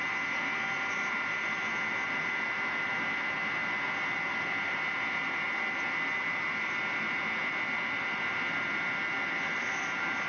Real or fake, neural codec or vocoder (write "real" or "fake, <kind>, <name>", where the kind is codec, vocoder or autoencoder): real